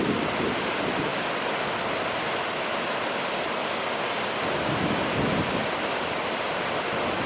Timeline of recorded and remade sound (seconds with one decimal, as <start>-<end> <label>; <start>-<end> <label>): 0.0-7.3 recorded